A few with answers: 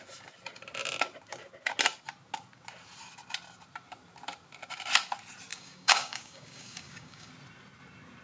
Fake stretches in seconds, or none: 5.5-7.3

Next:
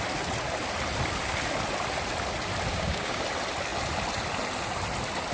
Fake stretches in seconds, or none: 2.7-3.2

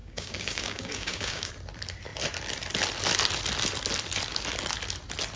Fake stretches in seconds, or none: 0.0-1.5

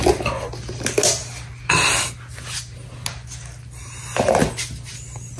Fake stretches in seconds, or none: none

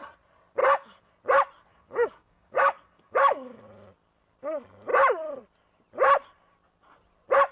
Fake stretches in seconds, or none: 0.6-1.1; 1.7-3.6

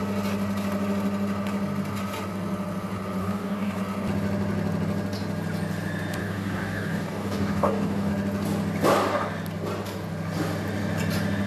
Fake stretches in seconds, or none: 3.2-3.8; 6.2-8.1

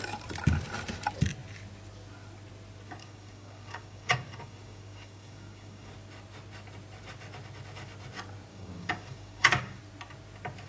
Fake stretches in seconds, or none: 3.0-5.9; 8.5-9.8